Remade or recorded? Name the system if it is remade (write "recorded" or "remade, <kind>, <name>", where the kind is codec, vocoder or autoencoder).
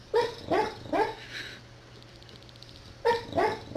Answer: recorded